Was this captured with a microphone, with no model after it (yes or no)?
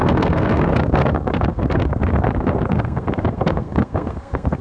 no